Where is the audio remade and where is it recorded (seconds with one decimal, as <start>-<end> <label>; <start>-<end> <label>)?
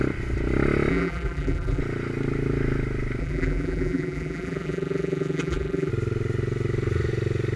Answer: 0.0-0.9 recorded; 0.9-1.8 remade; 1.8-3.2 recorded; 3.2-5.9 remade; 5.9-7.6 recorded